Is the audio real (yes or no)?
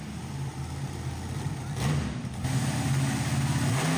yes